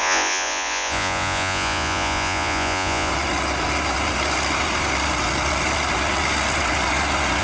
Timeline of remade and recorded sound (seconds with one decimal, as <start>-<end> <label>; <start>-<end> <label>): 0.0-3.1 remade; 3.1-7.4 recorded